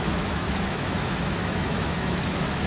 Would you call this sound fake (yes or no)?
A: yes